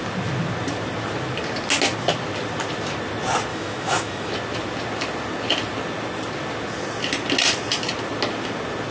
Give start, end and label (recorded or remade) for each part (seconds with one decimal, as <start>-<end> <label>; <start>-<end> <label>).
0.0-3.5 recorded; 3.5-4.3 remade; 4.3-8.9 recorded